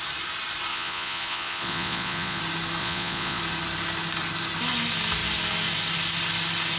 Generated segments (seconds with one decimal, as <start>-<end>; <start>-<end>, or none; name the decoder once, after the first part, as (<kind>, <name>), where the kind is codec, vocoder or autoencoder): 0.7-2.4 (vocoder, Vocos); 2.8-3.4